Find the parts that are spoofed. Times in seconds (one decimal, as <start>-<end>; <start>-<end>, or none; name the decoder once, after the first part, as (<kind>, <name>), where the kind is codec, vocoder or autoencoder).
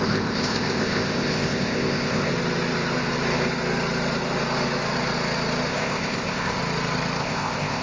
0.0-2.3 (codec, ZipCodec); 5.7-6.6; 7.2-7.8